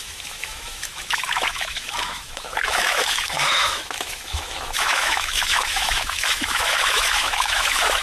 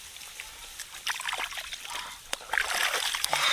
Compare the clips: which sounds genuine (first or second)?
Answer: second